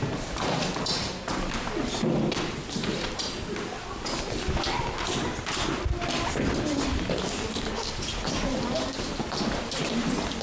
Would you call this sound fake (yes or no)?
no